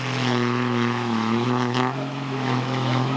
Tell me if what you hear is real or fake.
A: fake